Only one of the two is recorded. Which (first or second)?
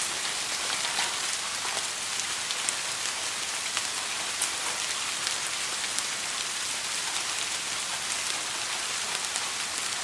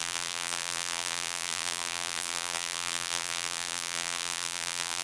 first